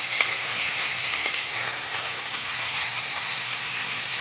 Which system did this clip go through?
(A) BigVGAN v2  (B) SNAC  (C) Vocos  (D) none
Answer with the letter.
B